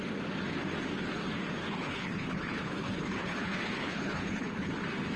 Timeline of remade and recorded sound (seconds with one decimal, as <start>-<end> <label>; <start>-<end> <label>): 0.0-1.6 recorded; 1.6-4.7 remade; 4.7-5.2 recorded